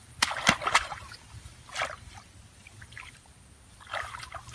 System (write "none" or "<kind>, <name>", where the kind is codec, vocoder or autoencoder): none